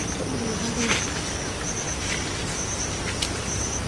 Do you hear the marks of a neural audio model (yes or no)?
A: no